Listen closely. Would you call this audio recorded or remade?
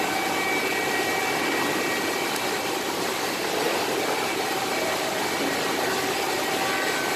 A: recorded